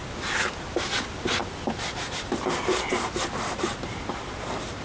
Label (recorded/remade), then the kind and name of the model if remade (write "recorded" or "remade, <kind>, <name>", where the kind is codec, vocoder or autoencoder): remade, vocoder, BigVGAN v2